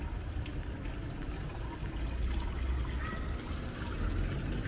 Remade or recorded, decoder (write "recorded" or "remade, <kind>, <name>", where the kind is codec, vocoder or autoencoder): recorded